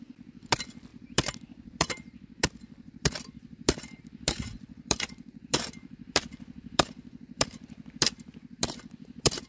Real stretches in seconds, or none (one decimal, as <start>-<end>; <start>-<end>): none